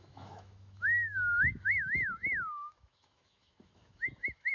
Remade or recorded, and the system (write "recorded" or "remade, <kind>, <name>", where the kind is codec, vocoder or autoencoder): remade, autoencoder, DAC-VAE